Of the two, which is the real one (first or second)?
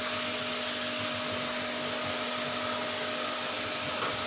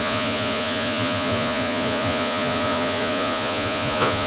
first